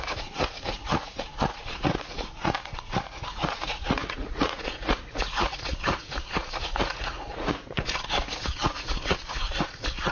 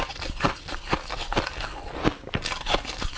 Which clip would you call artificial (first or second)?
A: first